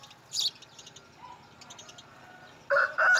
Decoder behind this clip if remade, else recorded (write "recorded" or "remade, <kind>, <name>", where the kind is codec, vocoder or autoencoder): recorded